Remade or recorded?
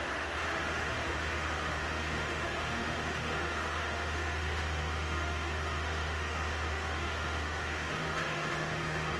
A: remade